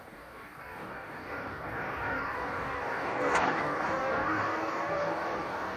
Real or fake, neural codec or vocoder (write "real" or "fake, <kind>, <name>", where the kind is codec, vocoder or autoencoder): fake, codec, DAC